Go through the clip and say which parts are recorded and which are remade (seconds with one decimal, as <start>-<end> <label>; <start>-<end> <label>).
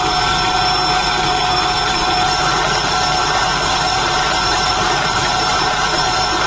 0.0-3.5 recorded; 3.5-5.6 remade; 5.6-6.5 recorded